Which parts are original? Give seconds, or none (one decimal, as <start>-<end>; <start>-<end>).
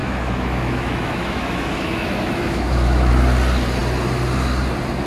3.1-5.1